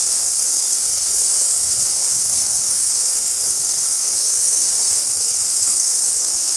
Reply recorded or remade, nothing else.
remade